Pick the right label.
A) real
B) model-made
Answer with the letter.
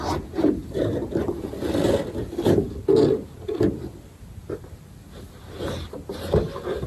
A